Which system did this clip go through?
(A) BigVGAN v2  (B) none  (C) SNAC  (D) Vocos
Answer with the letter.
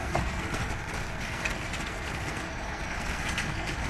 C